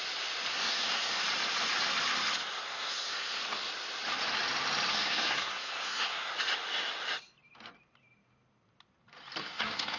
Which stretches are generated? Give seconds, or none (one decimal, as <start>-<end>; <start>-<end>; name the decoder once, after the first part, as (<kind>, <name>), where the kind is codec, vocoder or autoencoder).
0.5-1.2 (codec, SNAC); 2.6-3.4; 4.9-6.3; 9.4-10.0